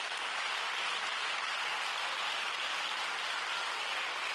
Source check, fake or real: fake